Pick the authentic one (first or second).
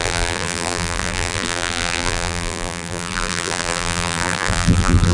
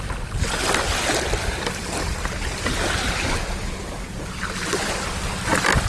second